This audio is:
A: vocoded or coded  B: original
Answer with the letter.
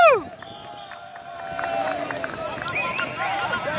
B